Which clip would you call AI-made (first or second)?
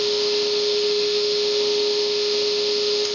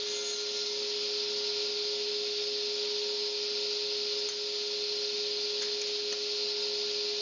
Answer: first